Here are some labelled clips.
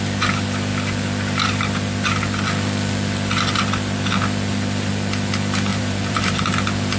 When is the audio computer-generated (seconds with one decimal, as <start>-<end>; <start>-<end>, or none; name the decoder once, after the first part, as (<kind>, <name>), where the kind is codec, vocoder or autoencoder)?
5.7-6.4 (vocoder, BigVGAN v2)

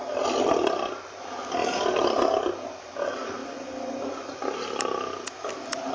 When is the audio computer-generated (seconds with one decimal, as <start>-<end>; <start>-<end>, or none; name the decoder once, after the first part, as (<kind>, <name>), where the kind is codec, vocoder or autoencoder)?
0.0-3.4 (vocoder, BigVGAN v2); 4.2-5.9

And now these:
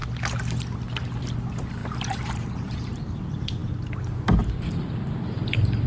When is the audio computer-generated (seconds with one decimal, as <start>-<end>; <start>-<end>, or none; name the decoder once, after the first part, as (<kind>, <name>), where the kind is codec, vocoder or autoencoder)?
1.2-3.6 (vocoder, BigVGAN v2); 5.1-5.9

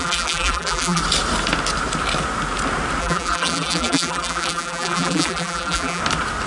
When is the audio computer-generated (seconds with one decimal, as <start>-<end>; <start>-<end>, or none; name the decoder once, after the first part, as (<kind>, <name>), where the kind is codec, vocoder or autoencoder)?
0.0-1.0 (vocoder, BigVGAN v2); 3.0-6.0